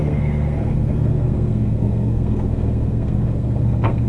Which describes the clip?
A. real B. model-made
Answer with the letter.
B